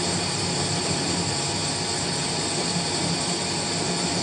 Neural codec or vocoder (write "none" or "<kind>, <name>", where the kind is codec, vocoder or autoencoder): none